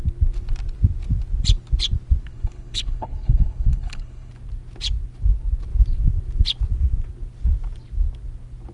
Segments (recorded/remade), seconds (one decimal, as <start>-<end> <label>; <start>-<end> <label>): 0.0-2.3 recorded; 2.3-4.3 remade; 4.3-8.7 recorded